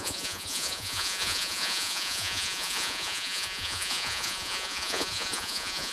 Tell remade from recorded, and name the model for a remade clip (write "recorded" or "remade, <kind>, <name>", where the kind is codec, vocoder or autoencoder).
remade, vocoder, Vocos